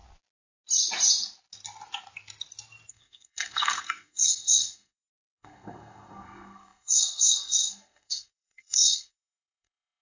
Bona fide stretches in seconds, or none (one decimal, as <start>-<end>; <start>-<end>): 0.0-2.9

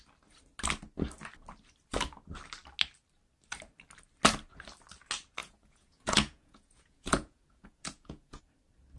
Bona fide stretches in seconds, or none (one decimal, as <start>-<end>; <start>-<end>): 0.0-5.4; 8.4-9.0